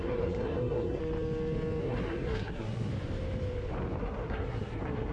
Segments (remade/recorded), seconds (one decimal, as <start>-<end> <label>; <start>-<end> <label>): 0.0-1.0 remade; 1.0-1.8 recorded; 1.8-2.9 remade; 2.9-4.0 recorded; 4.0-5.1 remade